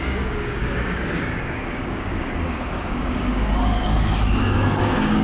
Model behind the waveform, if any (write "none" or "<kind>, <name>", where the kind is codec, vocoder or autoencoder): codec, DAC